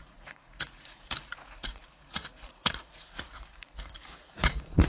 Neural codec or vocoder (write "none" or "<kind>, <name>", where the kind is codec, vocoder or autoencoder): vocoder, Vocos